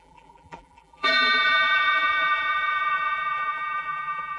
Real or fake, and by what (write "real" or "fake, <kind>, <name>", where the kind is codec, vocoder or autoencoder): fake, vocoder, BigVGAN v2